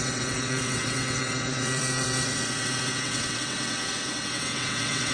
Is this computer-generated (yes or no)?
yes